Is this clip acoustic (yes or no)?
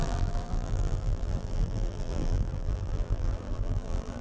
no